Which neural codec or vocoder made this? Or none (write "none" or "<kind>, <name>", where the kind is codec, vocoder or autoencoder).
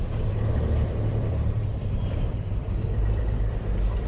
vocoder, BigVGAN v2